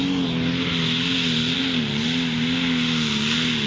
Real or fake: real